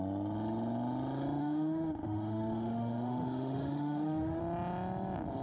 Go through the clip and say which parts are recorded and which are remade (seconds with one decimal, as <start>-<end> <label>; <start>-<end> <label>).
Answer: 0.0-1.4 recorded; 1.4-4.4 remade; 4.4-5.4 recorded